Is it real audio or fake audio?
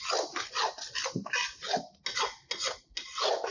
real